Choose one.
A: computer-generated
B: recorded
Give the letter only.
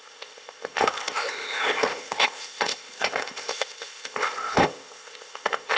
A